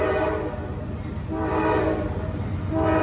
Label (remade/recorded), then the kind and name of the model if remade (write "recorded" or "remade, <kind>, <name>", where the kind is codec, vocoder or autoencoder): recorded